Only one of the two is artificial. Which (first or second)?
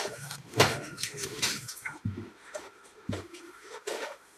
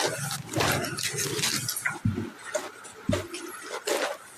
first